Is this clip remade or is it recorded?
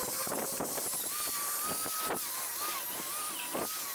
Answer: recorded